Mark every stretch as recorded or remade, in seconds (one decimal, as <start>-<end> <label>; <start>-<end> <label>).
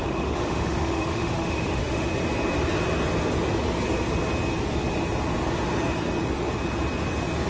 0.0-2.1 remade; 2.1-7.5 recorded